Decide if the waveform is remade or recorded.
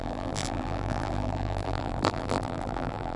remade